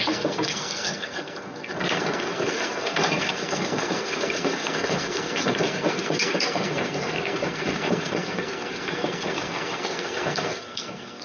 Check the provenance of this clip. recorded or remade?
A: remade